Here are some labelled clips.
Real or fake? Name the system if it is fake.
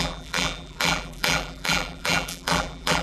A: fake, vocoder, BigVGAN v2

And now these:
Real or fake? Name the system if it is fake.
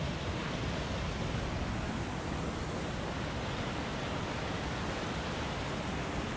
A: real